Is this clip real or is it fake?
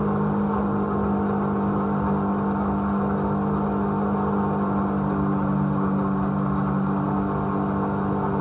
real